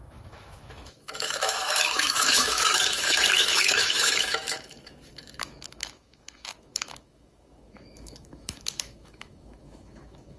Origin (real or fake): fake